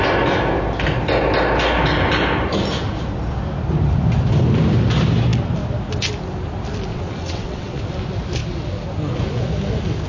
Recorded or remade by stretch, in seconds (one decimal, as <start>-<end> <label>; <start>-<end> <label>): 0.0-6.9 recorded; 6.9-7.8 remade; 7.8-10.1 recorded